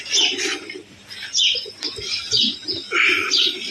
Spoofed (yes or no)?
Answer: no